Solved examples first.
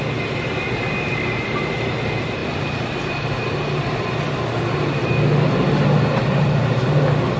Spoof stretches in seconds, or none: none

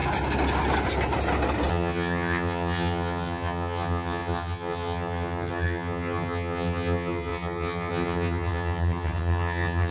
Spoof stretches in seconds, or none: 1.7-9.9 (vocoder, HiFi-GAN)